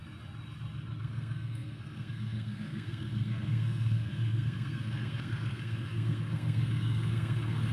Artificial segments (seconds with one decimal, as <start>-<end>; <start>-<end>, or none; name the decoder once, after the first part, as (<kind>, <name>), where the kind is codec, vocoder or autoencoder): 1.0-7.7 (codec, SNAC)